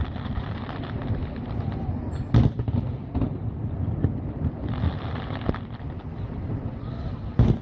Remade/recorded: recorded